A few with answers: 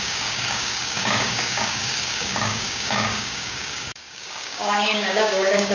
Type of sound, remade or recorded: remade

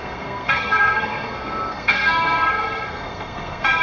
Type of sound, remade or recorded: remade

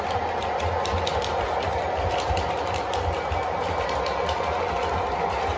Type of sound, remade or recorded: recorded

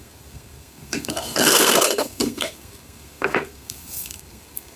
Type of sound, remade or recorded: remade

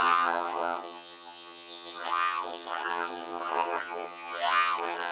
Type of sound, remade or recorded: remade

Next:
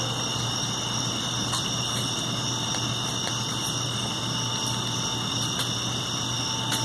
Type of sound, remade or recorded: recorded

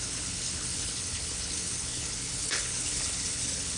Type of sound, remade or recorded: remade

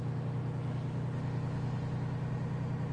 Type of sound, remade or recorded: recorded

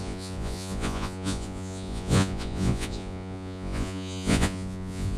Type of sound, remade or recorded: remade